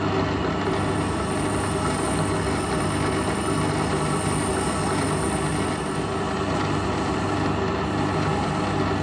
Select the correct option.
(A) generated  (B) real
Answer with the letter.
B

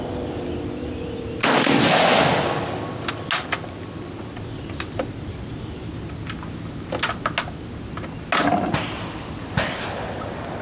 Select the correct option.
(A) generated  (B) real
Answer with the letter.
B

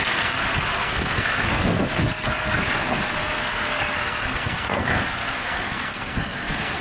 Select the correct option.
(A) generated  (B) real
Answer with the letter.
A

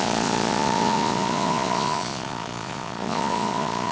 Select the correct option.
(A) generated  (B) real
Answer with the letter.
A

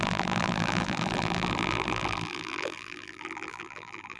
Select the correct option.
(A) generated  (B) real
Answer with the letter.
A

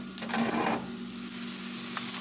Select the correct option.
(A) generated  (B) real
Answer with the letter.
B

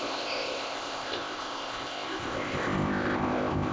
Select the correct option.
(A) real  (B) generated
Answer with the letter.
B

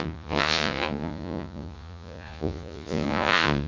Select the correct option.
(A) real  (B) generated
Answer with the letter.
B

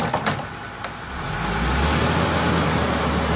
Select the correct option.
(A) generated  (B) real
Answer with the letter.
B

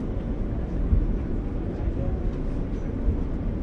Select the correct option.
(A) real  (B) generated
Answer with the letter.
A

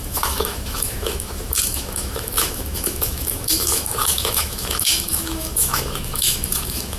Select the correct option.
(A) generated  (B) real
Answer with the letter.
A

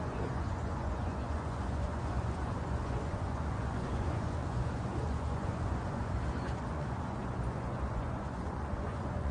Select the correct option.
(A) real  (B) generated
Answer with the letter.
B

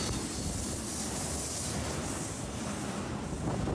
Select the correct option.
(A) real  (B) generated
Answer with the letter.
A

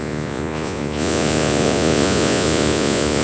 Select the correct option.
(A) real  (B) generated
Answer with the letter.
B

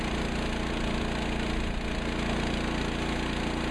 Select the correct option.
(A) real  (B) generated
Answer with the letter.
A